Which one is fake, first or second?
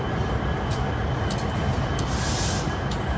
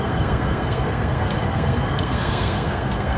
second